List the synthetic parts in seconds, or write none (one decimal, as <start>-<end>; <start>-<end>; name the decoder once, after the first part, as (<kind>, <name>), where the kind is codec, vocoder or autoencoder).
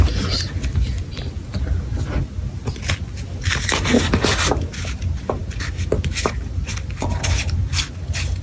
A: none